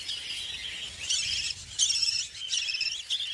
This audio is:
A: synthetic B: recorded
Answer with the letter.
B